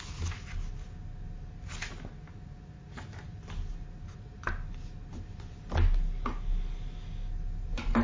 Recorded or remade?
recorded